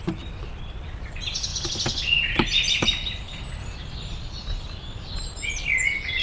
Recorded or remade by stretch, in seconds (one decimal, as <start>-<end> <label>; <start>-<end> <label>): 0.0-6.2 recorded